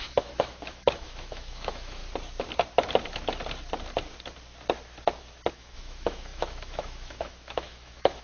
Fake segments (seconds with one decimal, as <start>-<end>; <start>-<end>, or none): 0.0-2.0; 5.5-8.2